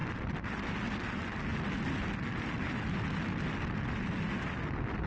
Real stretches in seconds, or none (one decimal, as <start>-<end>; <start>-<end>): 0.8-1.5; 4.3-5.1